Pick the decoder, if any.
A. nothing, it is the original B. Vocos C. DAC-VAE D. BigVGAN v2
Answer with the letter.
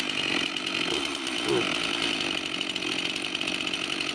A